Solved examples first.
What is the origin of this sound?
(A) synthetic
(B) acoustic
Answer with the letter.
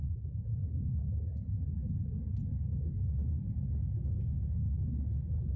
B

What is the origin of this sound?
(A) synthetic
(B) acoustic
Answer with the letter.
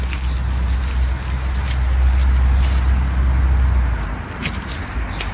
B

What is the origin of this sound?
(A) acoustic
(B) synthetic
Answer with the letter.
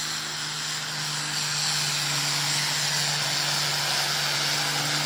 A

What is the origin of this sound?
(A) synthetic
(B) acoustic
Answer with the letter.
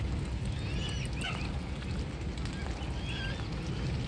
B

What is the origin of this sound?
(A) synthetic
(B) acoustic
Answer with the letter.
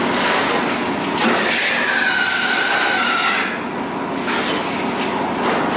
B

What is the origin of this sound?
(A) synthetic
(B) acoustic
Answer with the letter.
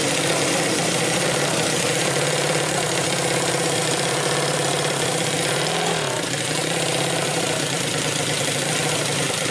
A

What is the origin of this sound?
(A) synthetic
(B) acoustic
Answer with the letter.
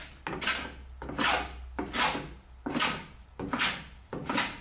B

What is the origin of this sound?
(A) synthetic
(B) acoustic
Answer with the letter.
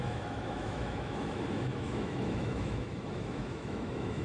A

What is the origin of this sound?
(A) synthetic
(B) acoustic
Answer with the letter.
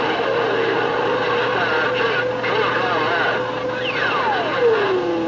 B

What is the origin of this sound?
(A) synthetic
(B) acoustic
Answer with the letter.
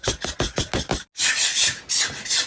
B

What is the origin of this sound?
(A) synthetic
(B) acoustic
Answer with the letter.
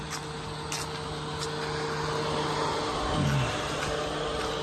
B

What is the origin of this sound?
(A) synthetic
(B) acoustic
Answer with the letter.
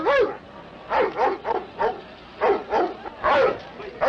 B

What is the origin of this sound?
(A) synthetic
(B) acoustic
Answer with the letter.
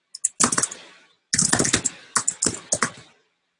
B